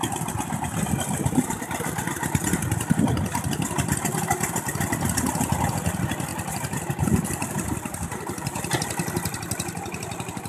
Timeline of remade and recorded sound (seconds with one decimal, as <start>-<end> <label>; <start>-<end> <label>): 0.0-6.3 recorded; 6.3-10.5 remade